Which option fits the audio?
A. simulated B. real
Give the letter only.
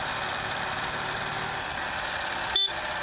B